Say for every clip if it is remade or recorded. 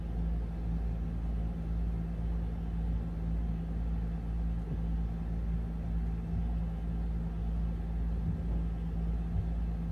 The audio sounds recorded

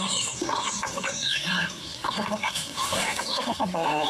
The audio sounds remade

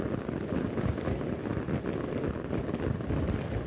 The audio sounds recorded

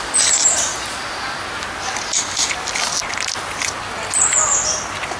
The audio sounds recorded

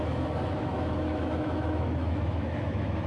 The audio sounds remade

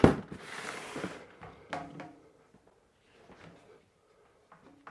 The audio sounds recorded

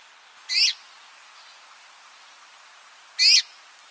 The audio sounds recorded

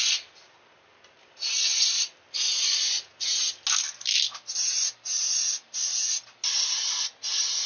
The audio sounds recorded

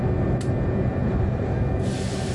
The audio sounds recorded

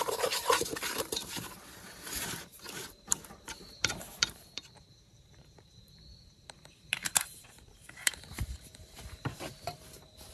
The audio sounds remade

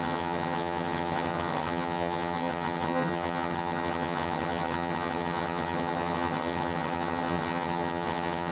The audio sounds remade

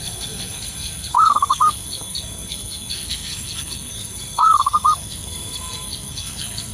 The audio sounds remade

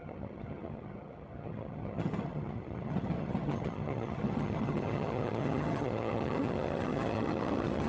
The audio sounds remade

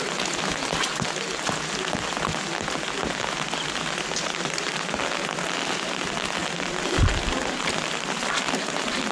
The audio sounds recorded